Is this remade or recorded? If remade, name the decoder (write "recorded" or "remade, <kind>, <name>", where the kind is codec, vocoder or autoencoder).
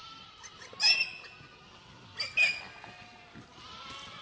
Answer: recorded